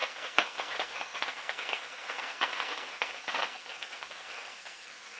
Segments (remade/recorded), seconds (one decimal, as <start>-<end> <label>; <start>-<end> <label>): 0.0-5.2 remade